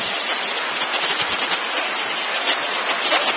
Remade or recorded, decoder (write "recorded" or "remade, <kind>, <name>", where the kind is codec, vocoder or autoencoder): recorded